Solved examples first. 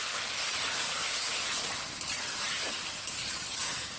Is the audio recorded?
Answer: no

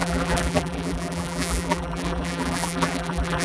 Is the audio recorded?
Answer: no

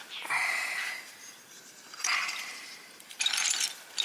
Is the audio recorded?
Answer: no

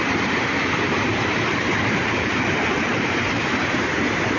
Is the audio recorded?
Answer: no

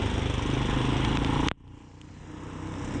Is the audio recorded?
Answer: yes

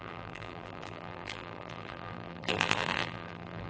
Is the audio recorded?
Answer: no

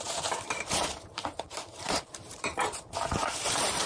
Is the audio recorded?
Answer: no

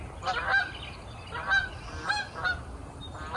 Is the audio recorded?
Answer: no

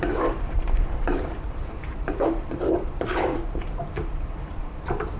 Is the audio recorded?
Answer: no